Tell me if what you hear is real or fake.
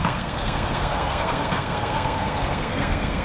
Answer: fake